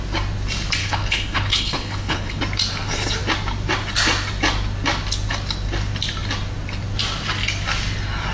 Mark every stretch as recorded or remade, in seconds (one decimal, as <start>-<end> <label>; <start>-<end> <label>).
0.0-0.8 recorded; 0.8-2.4 remade; 2.4-8.3 recorded